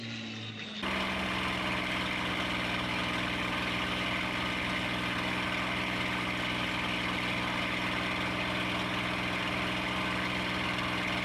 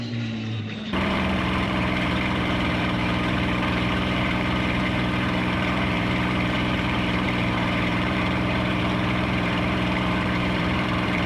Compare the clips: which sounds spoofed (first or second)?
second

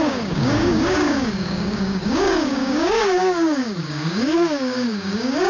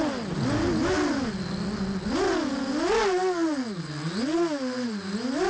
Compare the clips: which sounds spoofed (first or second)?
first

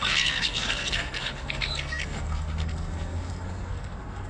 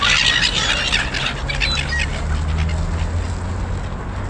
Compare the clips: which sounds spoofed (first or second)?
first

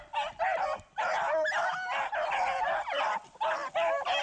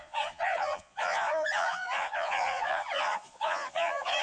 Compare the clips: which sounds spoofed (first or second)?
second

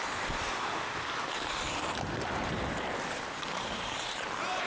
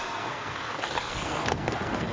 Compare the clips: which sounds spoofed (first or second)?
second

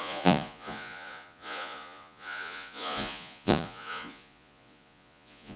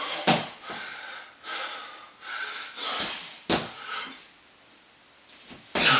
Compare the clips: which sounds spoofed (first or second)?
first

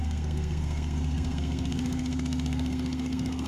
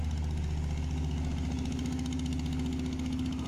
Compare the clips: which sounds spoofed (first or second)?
first